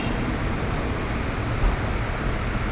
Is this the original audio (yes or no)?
yes